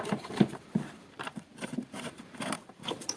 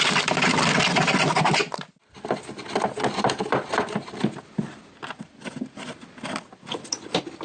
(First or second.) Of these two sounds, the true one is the second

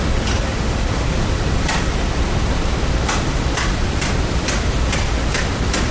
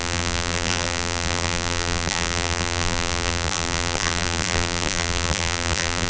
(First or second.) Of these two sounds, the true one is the first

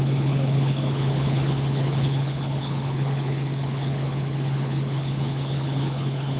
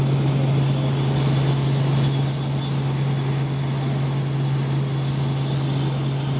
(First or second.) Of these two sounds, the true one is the second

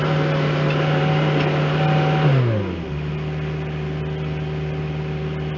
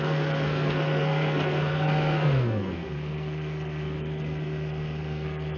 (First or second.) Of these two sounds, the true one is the first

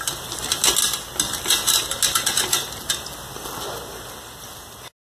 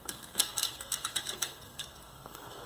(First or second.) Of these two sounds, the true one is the first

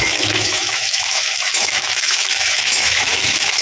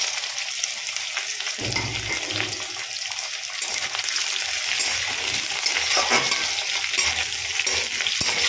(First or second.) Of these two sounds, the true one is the second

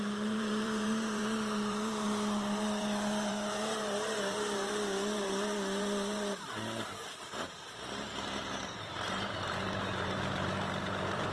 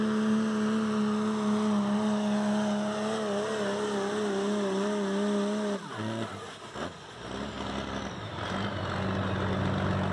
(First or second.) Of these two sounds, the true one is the second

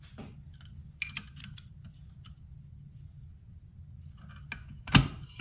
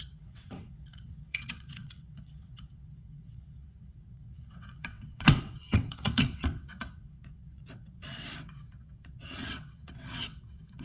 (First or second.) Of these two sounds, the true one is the first